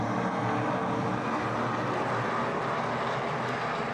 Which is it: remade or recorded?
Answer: recorded